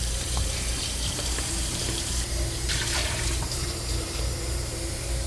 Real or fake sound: fake